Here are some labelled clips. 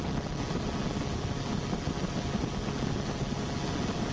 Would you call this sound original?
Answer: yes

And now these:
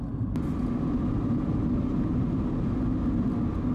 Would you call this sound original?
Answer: yes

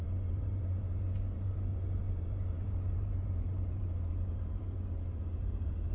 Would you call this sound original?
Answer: no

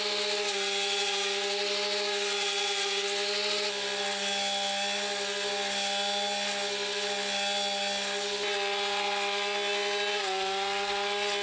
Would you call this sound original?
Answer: yes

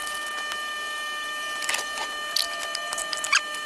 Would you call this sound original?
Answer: yes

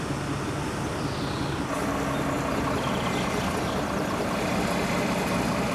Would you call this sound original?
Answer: yes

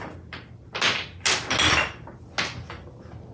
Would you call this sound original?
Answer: yes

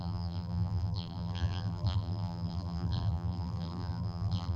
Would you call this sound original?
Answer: no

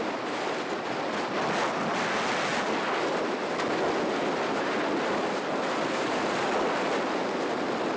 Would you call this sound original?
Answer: yes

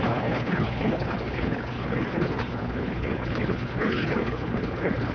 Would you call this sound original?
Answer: no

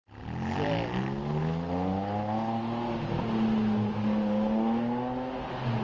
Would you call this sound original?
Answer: yes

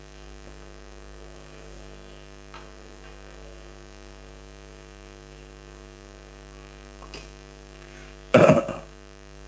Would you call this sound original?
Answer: no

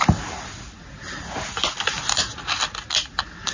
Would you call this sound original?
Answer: yes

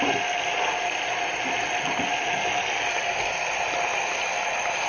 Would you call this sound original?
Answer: yes